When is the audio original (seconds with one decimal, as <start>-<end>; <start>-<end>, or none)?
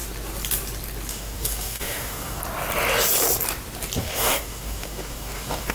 0.0-1.1; 2.4-4.0